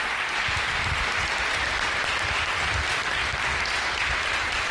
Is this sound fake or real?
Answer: real